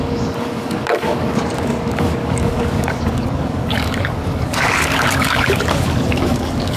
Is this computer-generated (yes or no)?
yes